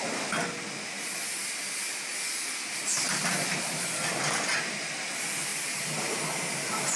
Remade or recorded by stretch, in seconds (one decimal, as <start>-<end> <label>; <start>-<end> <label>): 0.0-7.0 recorded